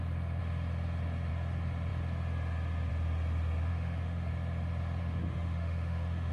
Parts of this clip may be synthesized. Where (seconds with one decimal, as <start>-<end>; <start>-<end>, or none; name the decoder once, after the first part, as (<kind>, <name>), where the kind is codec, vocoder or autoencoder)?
3.7-4.3 (autoencoder, DAC-VAE); 5.0-6.3